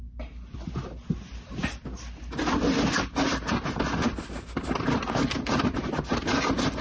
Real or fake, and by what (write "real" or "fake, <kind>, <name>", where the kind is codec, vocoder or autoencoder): real